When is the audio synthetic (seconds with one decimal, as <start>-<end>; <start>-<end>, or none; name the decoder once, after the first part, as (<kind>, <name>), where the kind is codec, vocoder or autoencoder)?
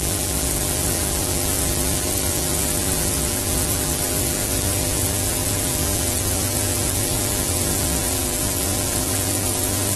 0.0-10.0 (vocoder, BigVGAN v2)